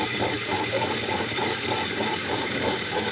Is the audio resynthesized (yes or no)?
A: yes